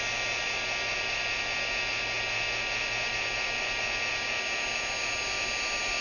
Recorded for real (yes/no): yes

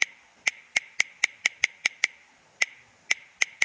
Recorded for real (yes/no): yes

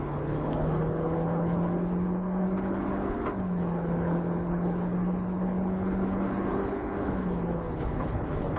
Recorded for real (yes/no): no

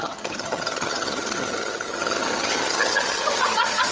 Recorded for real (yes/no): no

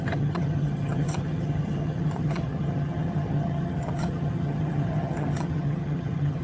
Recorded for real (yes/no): no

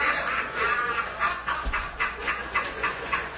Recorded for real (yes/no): no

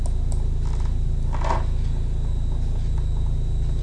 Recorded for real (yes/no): yes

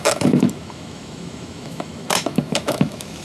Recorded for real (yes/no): no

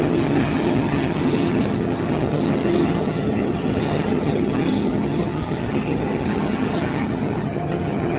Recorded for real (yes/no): no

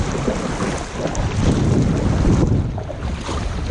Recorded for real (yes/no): yes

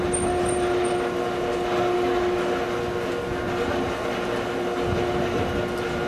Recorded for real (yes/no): yes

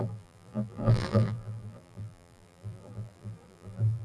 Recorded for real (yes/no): no